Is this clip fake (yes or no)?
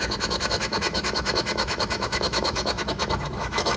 yes